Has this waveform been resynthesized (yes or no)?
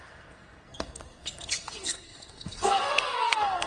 yes